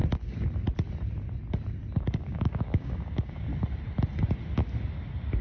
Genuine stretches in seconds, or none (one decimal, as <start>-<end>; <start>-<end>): 0.0-2.0; 3.5-5.4